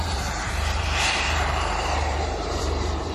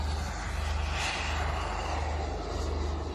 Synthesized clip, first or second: first